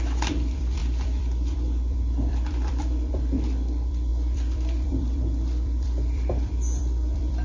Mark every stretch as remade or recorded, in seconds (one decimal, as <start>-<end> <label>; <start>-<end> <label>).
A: 0.0-7.4 remade

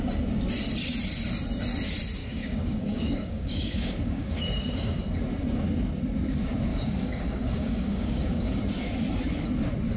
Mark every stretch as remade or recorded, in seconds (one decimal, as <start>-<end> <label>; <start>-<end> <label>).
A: 0.0-2.2 recorded; 2.2-5.0 remade; 5.0-6.7 recorded; 6.7-8.6 remade; 8.6-10.0 recorded